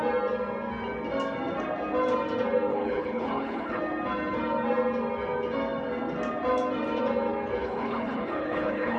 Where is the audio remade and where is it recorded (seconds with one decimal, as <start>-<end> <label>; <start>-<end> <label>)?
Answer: 0.0-2.7 recorded; 2.7-3.8 remade; 3.8-7.6 recorded; 7.6-9.0 remade